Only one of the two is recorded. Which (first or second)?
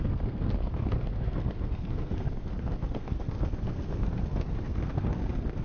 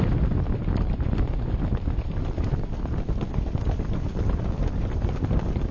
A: second